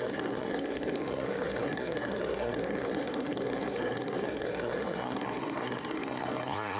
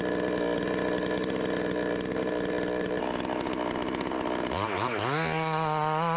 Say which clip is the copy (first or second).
first